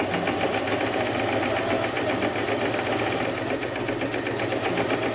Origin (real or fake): real